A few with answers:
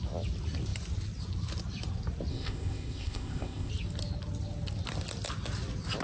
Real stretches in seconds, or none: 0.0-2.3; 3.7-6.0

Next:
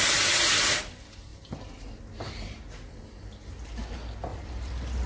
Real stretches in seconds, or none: 0.0-1.3; 2.0-4.3

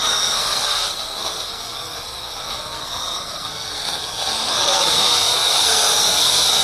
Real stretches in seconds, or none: none

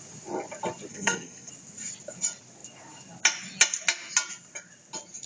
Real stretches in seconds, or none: 0.0-0.9; 1.5-5.3

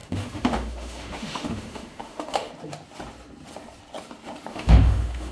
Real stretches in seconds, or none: 2.5-4.5

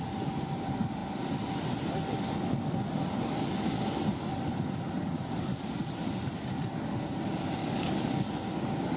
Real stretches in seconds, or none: 0.0-7.6; 8.3-9.0

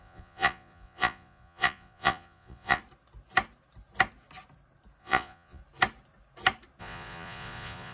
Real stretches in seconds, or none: 2.8-5.0; 5.6-6.8

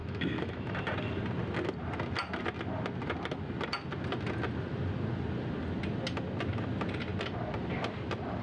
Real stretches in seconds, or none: 0.8-8.4